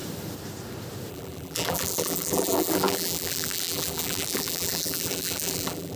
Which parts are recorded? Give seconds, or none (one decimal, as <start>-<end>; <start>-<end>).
0.0-1.1